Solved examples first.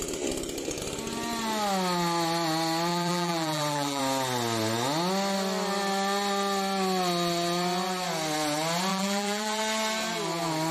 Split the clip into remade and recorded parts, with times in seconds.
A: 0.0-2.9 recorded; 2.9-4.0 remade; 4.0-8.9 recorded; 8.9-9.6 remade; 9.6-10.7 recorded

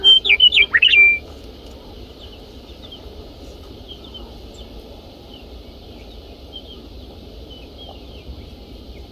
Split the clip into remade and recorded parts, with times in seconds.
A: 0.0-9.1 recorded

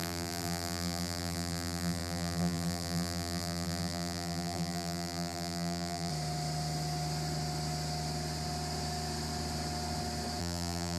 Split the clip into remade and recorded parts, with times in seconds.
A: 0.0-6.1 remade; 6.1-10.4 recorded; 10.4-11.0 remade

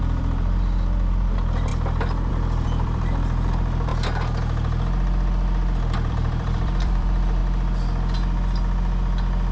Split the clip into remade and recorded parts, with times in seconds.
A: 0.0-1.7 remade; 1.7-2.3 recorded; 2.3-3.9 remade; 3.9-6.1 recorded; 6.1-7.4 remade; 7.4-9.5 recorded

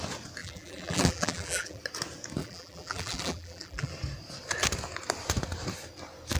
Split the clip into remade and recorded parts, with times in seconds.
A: 0.0-0.4 recorded; 0.4-1.8 remade; 1.8-2.4 recorded; 2.4-3.9 remade; 3.9-6.4 recorded

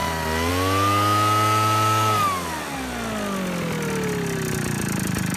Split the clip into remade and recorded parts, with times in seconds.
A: 0.0-5.4 recorded

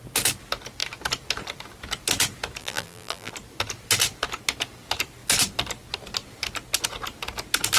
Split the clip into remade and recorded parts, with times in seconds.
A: 0.0-2.6 recorded; 2.6-3.3 remade; 3.3-7.8 recorded